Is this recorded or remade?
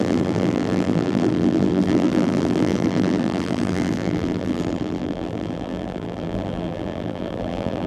remade